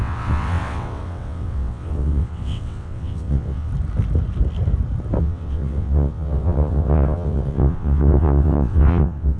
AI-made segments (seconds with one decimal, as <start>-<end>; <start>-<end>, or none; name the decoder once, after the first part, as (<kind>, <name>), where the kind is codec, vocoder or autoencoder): 0.0-3.7 (vocoder, WaveNeXt); 5.2-9.4